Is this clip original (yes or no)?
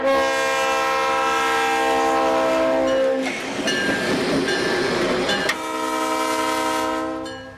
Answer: yes